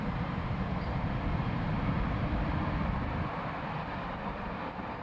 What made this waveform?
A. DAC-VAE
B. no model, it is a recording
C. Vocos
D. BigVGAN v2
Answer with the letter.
D